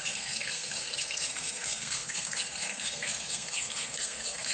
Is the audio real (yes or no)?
no